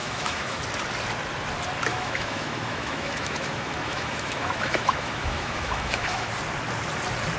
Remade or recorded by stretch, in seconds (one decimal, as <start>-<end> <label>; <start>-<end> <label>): 0.0-0.6 remade; 0.6-1.9 recorded; 1.9-6.3 remade; 6.3-7.4 recorded